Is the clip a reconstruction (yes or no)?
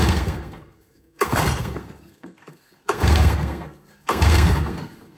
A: yes